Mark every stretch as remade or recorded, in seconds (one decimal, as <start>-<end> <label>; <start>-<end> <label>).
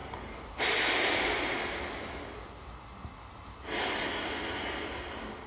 0.0-0.8 remade; 0.8-5.5 recorded